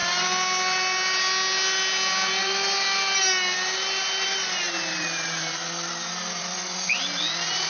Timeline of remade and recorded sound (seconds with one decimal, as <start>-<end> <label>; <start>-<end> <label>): 0.0-7.7 recorded